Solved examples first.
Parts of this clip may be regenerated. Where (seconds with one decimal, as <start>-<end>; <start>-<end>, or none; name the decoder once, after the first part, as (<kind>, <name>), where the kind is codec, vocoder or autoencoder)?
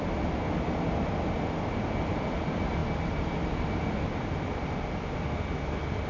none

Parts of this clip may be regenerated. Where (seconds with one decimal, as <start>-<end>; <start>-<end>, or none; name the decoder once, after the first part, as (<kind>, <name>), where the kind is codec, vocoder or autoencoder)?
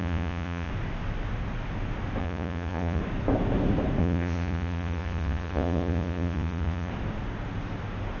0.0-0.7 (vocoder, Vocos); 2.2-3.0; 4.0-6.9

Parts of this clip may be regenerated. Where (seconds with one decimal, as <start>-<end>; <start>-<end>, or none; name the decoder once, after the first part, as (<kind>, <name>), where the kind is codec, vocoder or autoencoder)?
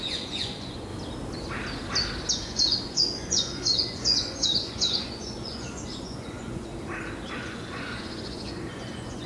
0.0-0.9 (vocoder, Vocos); 2.3-6.7; 7.3-9.3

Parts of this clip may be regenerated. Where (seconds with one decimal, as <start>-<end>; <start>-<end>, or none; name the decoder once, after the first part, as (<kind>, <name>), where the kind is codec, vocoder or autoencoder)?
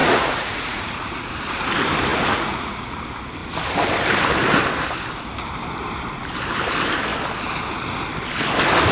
0.0-1.3 (vocoder, Vocos); 2.1-3.0